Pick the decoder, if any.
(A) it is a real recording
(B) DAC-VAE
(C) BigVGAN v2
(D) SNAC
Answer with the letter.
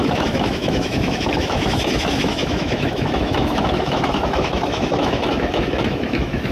B